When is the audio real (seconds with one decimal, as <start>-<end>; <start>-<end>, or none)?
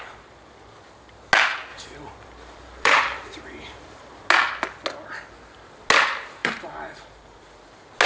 0.0-1.7; 4.3-6.4; 7.4-8.1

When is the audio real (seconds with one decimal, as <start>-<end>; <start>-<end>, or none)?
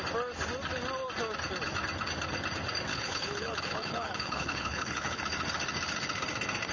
0.0-2.9; 5.2-6.7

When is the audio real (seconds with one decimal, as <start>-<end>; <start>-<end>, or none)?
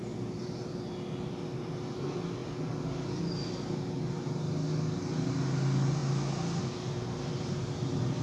0.0-8.2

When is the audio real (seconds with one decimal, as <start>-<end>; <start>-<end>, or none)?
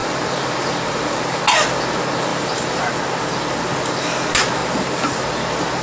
1.4-2.3; 2.9-4.6; 5.2-5.8